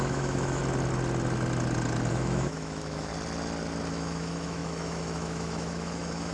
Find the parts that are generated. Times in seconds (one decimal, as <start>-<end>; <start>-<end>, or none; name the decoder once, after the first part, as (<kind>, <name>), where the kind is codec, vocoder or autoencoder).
0.0-0.6 (autoencoder, DAC-VAE); 2.1-3.1; 3.9-6.3